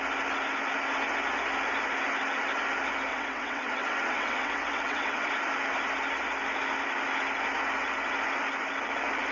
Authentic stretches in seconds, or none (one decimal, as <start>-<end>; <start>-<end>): 0.0-3.1; 5.3-9.3